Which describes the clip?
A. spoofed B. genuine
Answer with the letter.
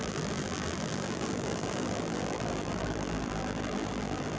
A